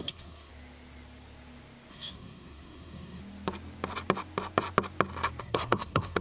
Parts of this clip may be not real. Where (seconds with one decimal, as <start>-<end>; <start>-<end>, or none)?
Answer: 0.0-0.5; 1.9-3.2; 5.4-6.2